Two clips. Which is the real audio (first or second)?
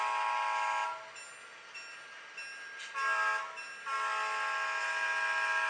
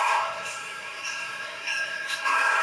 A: first